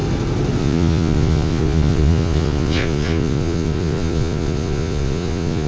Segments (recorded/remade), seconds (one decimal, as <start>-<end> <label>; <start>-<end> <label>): 0.0-0.6 recorded; 0.6-5.7 remade